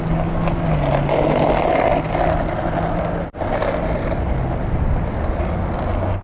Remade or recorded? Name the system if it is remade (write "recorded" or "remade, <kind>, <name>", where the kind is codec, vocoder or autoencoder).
recorded